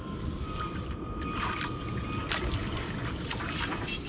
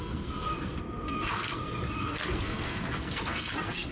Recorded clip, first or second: first